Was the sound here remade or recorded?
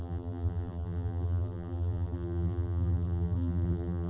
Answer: remade